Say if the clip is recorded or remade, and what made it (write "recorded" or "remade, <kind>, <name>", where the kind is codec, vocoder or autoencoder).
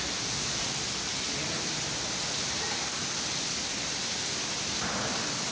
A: recorded